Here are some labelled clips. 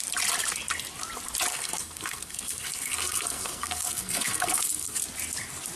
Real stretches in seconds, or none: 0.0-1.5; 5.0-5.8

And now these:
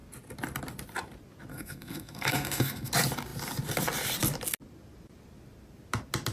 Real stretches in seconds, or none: 0.0-1.5; 2.9-6.3

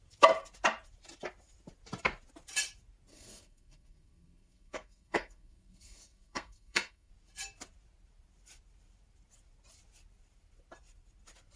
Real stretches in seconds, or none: 0.0-3.1; 7.1-11.6

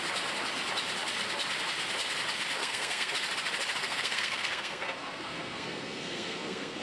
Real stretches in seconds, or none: 0.0-2.6; 3.1-3.8

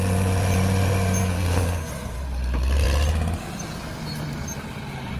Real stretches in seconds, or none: 0.0-1.2; 1.9-5.2

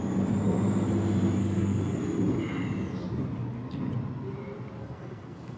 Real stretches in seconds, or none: 0.0-1.4; 2.0-4.8